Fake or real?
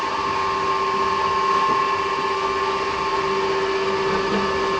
real